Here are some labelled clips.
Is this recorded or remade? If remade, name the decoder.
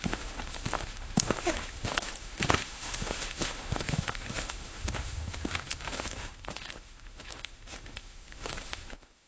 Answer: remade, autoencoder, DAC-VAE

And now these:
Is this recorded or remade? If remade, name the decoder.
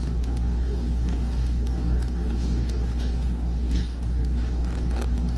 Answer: remade, codec, DAC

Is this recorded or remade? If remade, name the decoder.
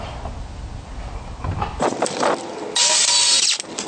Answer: recorded